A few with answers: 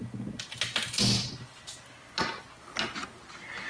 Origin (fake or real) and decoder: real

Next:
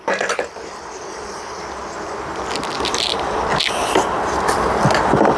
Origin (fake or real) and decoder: real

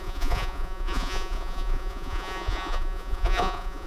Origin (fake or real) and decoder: fake, vocoder, Vocos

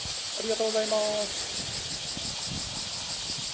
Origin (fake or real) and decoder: real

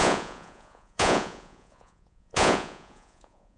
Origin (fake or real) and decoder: fake, vocoder, Vocos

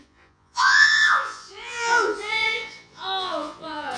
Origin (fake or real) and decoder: fake, vocoder, Vocos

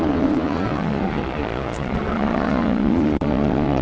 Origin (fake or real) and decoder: fake, vocoder, Vocos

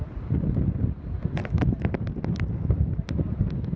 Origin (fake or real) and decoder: real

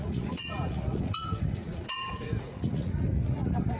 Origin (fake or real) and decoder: fake, vocoder, Vocos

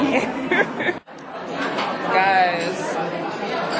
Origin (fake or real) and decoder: real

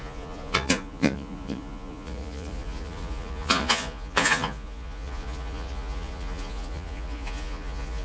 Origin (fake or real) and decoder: fake, vocoder, Vocos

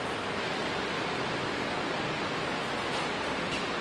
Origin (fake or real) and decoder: real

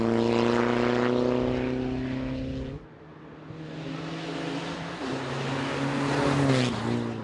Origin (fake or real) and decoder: real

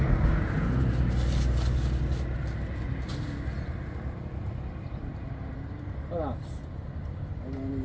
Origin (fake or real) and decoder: real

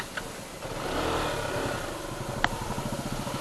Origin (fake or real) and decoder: real